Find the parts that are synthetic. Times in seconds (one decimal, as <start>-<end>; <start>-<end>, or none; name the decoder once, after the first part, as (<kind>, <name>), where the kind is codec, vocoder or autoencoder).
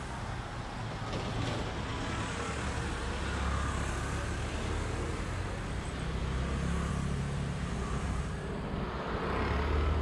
none